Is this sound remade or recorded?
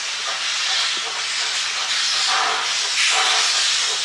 recorded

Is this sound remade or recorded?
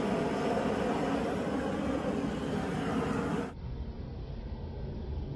recorded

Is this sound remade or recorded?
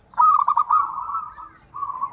recorded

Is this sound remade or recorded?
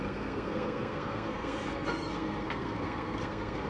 remade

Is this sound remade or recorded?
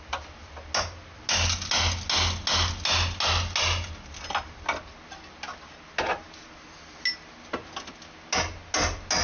recorded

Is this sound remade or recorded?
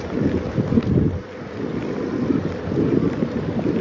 recorded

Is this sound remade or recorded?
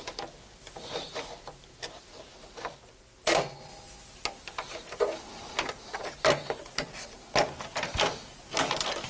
recorded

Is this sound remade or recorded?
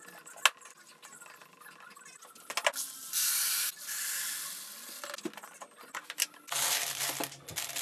recorded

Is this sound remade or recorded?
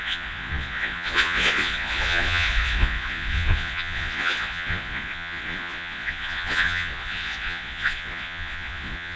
remade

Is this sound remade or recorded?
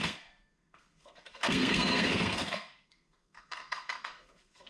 remade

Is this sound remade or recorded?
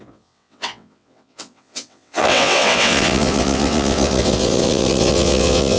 remade